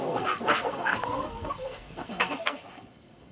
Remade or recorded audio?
remade